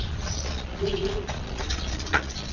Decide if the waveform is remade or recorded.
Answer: remade